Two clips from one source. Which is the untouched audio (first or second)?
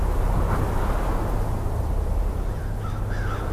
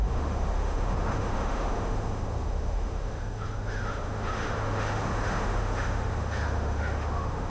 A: first